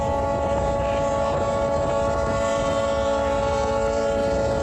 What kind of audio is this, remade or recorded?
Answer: remade